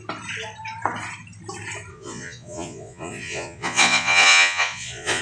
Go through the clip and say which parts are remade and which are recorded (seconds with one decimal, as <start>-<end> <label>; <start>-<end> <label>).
0.0-1.9 recorded; 1.9-5.2 remade